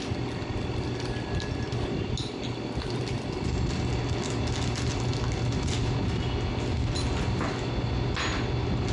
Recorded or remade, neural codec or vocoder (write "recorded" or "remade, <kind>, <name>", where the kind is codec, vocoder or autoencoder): recorded